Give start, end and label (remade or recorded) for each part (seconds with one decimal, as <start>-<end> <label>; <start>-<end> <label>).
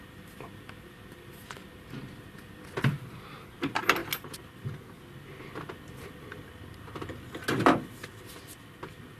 0.0-9.2 recorded